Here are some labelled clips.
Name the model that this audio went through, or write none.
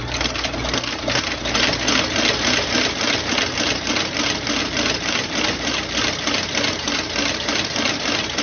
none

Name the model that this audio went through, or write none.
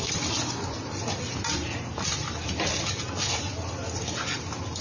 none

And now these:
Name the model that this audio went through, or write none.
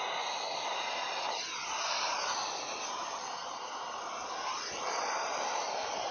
none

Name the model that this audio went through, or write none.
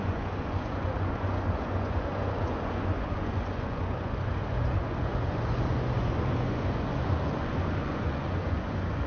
vocoder, Vocos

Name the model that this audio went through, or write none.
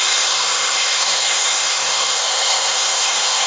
codec, SNAC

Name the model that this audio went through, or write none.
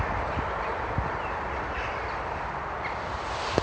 vocoder, BigVGAN v2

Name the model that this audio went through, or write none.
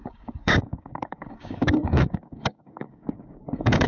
codec, DAC